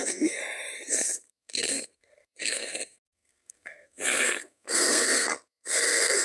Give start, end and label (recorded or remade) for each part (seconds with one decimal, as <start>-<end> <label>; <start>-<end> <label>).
0.0-0.4 remade; 0.4-0.9 recorded; 0.9-6.2 remade